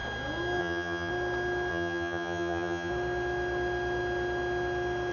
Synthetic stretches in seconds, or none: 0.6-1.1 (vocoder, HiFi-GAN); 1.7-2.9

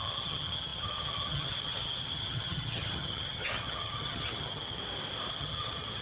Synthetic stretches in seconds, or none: 0.0-4.8 (vocoder, HiFi-GAN); 5.3-6.0